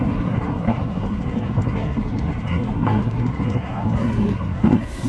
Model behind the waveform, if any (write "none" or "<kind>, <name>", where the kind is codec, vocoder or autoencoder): codec, SNAC